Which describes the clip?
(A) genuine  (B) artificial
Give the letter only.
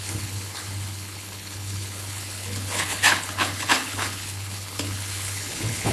B